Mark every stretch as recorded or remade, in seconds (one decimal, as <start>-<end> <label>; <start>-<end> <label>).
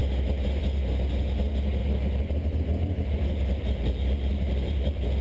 0.0-1.8 recorded; 1.8-5.2 remade